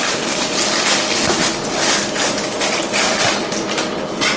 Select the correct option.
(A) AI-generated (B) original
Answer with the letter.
B